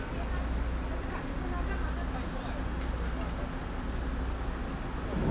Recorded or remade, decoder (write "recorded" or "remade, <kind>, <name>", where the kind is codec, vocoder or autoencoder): recorded